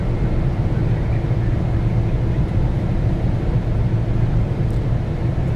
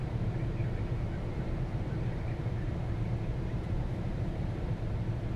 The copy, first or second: second